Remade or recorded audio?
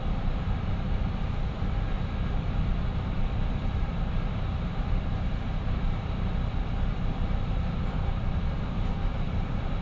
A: remade